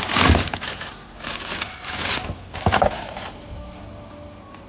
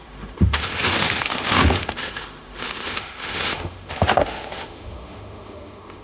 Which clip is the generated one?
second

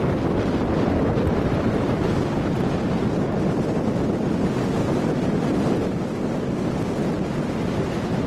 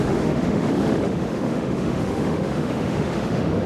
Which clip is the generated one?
second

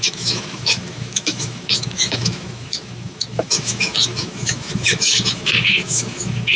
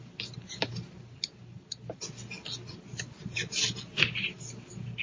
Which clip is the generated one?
first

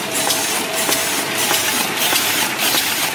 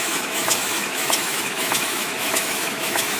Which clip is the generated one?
second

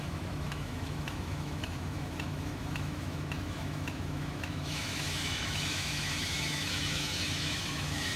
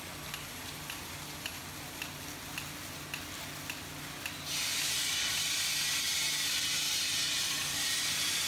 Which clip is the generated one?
first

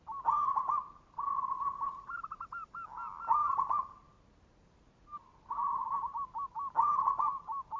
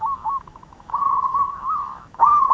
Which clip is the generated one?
second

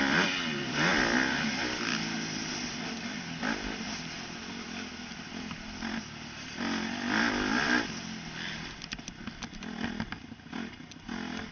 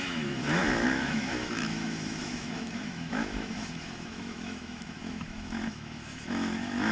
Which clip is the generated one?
second